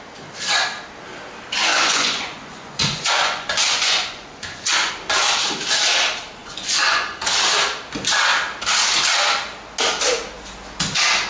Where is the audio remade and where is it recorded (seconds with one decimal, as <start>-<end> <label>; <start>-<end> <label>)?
0.0-1.7 recorded; 1.7-4.9 remade; 4.9-6.4 recorded; 6.4-7.3 remade; 7.3-11.3 recorded